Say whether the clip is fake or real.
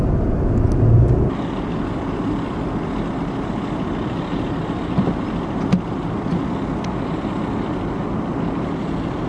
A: real